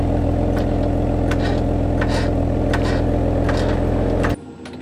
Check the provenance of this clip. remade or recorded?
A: recorded